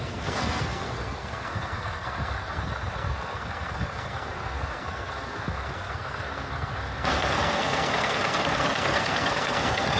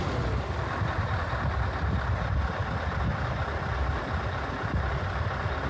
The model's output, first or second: first